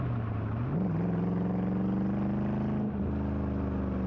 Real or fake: real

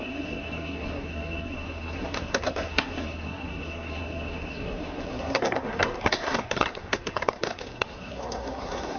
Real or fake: fake